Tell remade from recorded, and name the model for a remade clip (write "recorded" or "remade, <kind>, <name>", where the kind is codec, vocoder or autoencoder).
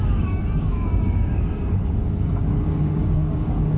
remade, codec, DAC